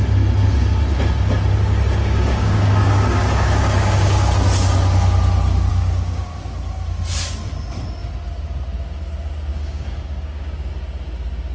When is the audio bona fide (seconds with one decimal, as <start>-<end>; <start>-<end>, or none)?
0.0-2.0; 4.3-5.7; 6.3-9.5; 10.7-11.5